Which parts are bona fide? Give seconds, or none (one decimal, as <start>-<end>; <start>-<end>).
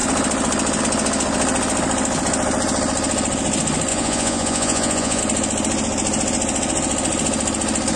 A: 0.0-3.9; 5.2-8.0